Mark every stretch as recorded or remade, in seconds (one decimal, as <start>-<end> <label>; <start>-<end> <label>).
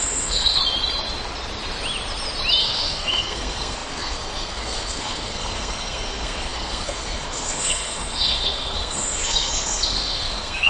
0.0-0.6 remade; 0.6-2.6 recorded; 2.6-10.7 remade